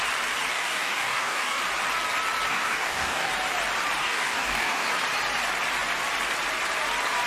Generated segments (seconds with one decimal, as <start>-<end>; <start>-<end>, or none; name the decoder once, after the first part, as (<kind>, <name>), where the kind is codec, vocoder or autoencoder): 0.5-1.6 (codec, DAC); 2.5-3.3; 4.0-4.9